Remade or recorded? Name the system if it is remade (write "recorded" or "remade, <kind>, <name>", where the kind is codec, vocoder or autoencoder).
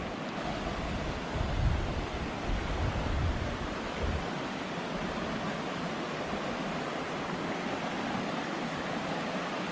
recorded